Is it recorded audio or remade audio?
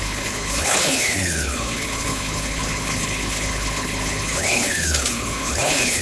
remade